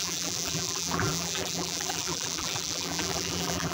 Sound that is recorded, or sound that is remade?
remade